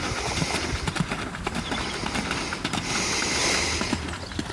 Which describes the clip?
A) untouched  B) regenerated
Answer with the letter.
A